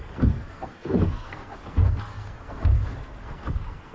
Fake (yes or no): yes